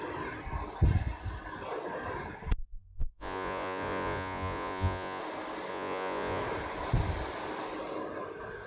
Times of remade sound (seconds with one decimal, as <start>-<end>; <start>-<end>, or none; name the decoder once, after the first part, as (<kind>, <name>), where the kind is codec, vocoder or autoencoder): 2.6-5.2 (vocoder, Vocos); 5.7-6.4